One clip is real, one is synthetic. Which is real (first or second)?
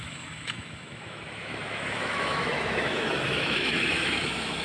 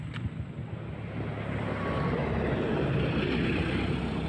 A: second